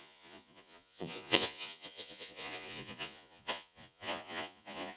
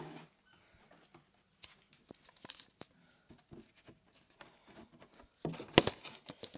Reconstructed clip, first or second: first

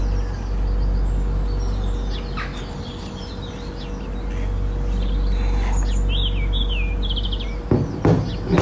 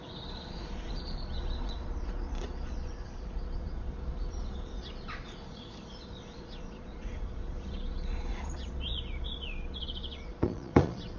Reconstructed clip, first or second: second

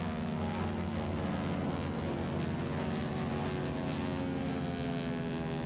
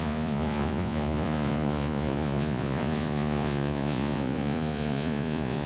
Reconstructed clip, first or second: second